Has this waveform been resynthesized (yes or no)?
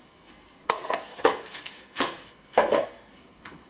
yes